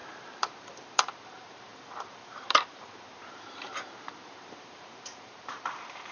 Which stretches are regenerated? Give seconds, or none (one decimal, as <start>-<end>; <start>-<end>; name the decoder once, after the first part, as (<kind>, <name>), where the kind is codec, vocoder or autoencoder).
0.0-6.1 (vocoder, BigVGAN v2)